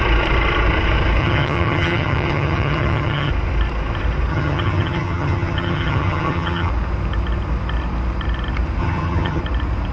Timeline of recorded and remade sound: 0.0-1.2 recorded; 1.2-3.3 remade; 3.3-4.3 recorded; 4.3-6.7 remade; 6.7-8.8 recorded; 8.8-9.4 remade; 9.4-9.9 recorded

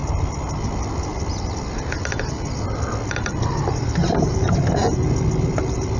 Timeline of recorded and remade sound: 0.0-6.0 recorded

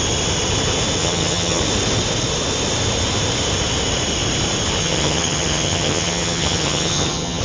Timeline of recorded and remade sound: 0.0-1.0 recorded; 1.0-1.6 remade; 1.6-4.8 recorded; 4.8-7.4 remade

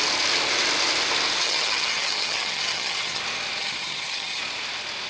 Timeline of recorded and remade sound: 0.0-1.4 recorded; 1.4-3.2 remade; 3.2-3.6 recorded; 3.6-4.4 remade; 4.4-5.1 recorded

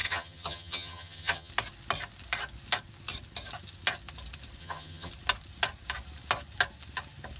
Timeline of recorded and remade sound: 0.0-1.5 remade; 1.5-4.6 recorded; 4.6-5.1 remade; 5.1-7.4 recorded